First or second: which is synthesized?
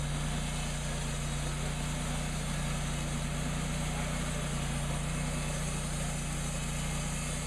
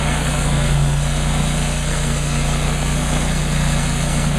second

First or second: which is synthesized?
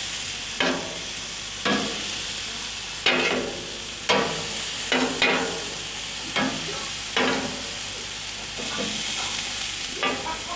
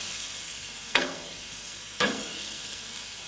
second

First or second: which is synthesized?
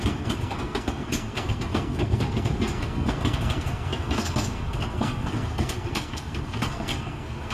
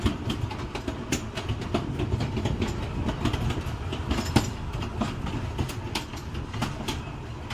first